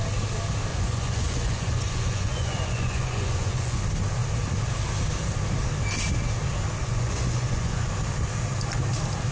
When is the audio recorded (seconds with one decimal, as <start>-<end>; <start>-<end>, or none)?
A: 0.0-0.7; 3.8-6.8; 7.9-9.3